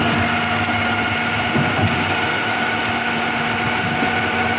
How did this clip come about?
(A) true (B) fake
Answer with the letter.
A